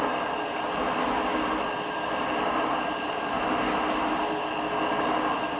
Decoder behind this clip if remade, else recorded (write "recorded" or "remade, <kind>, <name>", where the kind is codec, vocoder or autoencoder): recorded